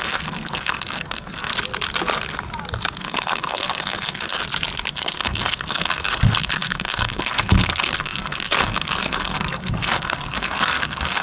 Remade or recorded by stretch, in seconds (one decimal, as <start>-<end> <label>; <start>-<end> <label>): 0.0-1.5 remade; 1.5-3.0 recorded; 3.0-4.4 remade; 4.4-4.9 recorded; 4.9-11.2 remade